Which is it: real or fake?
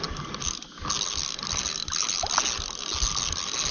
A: real